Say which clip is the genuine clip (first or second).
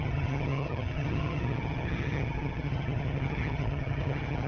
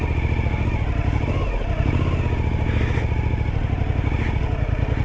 second